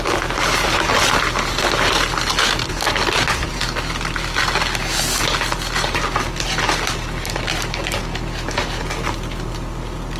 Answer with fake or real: real